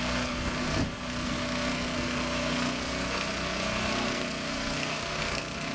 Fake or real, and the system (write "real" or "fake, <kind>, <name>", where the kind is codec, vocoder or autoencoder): fake, codec, SNAC